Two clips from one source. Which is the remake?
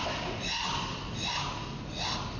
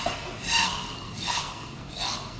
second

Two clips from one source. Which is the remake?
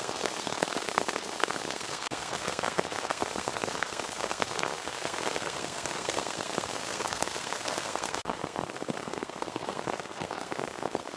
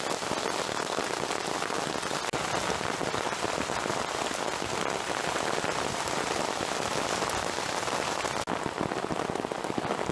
first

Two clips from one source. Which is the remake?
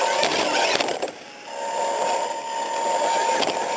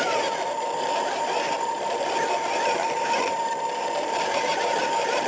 second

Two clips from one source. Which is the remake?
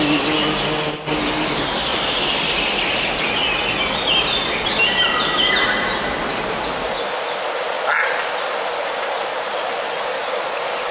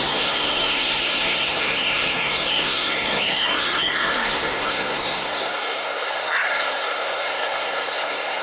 second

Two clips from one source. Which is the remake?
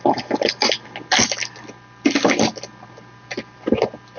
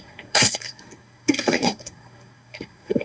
second